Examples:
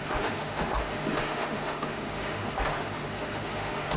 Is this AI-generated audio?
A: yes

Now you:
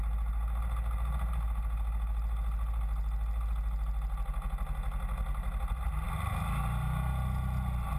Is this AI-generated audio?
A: no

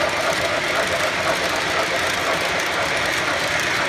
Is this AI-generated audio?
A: no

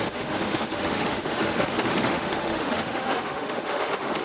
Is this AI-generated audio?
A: yes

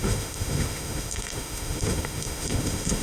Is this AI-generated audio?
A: yes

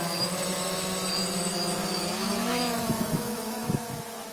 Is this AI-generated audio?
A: yes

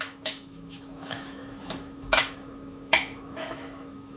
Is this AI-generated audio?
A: yes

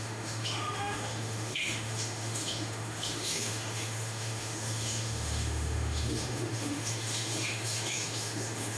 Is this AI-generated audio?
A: yes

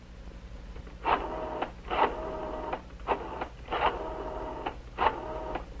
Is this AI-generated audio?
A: no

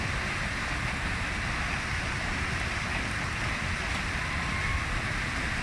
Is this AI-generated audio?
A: no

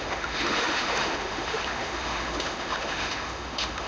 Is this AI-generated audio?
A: yes